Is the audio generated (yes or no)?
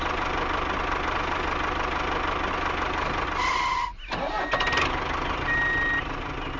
no